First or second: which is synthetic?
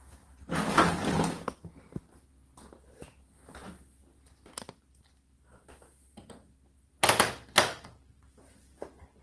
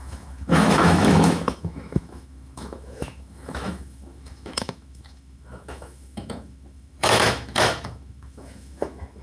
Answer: second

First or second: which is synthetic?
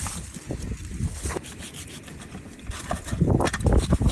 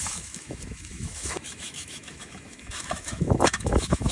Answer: second